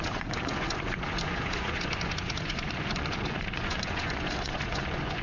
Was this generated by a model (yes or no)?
yes